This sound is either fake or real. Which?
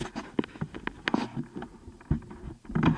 real